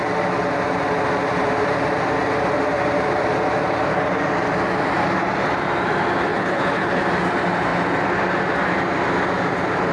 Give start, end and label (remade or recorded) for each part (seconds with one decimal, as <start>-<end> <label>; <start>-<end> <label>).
0.0-6.3 recorded; 6.3-7.0 remade; 7.0-9.9 recorded